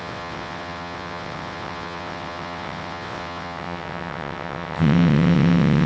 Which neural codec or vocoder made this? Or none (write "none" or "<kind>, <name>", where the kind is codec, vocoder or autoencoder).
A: vocoder, WaveNeXt